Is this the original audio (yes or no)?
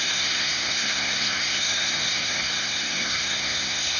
no